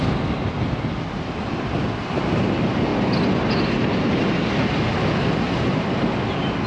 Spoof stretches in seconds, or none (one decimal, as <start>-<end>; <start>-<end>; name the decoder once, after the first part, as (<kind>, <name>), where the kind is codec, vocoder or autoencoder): none